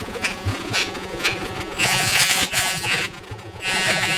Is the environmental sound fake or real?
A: fake